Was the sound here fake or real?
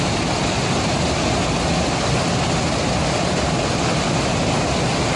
real